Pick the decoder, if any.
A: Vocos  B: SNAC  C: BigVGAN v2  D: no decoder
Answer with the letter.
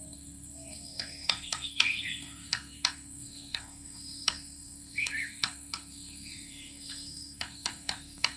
B